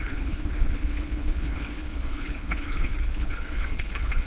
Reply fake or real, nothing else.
fake